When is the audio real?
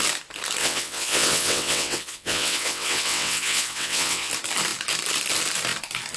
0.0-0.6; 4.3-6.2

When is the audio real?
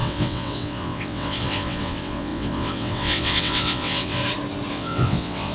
4.2-4.7